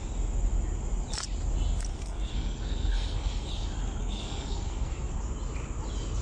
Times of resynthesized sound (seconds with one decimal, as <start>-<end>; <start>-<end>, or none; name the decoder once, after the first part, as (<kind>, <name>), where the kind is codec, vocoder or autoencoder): 1.9-3.5 (codec, SNAC); 4.0-5.2